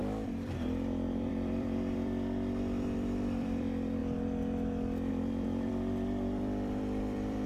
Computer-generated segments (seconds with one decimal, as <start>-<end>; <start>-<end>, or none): 0.0-4.0; 5.1-7.5